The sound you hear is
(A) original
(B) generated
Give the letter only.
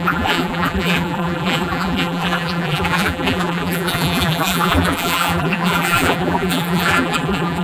B